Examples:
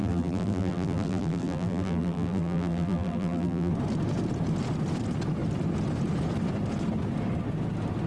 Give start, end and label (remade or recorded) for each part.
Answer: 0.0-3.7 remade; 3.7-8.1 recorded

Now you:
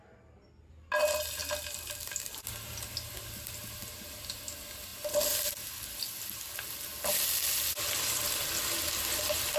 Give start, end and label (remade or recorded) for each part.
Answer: 0.0-9.6 recorded

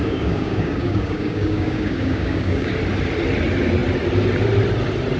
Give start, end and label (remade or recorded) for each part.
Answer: 0.0-2.7 remade; 2.7-5.2 recorded

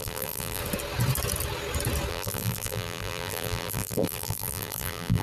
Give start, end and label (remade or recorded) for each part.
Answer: 0.0-0.6 remade; 0.6-2.1 recorded; 2.1-5.2 remade

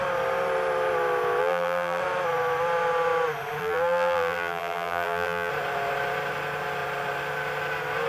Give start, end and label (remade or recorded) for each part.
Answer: 0.0-1.4 recorded; 1.4-2.0 remade; 2.0-3.6 recorded; 3.6-5.5 remade; 5.5-8.1 recorded